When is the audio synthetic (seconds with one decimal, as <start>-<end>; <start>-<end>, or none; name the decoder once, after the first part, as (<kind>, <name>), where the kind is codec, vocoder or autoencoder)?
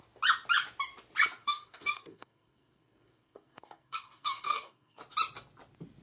1.4-5.0 (codec, SNAC)